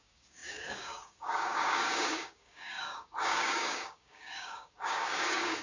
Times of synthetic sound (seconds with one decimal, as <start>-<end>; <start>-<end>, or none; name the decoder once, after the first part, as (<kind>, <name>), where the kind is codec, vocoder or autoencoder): 0.0-5.6 (codec, DAC)